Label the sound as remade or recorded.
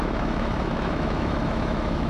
remade